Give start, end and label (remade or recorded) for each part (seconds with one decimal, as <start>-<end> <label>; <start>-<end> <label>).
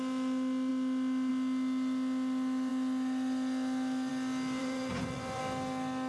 0.0-4.6 recorded; 4.6-5.4 remade; 5.4-6.1 recorded